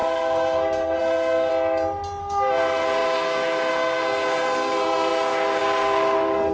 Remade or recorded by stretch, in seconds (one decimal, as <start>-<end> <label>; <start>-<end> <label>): 0.0-1.5 remade; 1.5-2.2 recorded; 2.2-6.5 remade